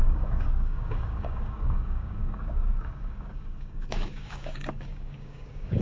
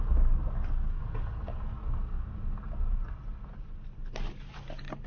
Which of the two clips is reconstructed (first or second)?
first